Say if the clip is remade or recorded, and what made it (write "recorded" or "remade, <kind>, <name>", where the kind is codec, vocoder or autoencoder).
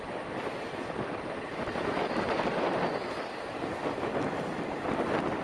recorded